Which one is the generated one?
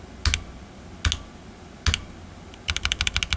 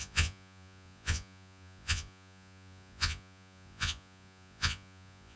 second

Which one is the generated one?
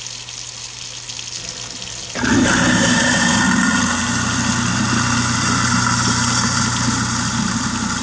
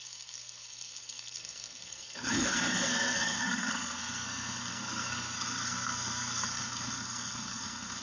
second